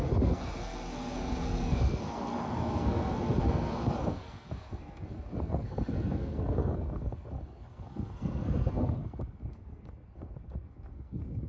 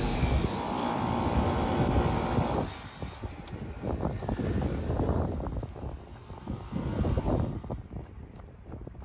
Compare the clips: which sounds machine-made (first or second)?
first